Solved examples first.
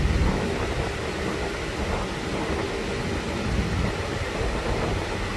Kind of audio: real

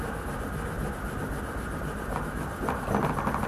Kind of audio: real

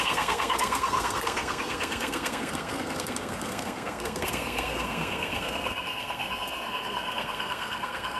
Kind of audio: fake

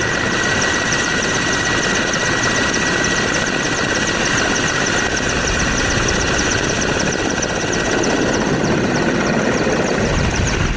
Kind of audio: real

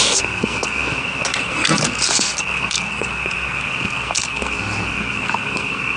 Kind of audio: fake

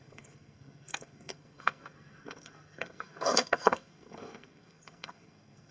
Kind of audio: fake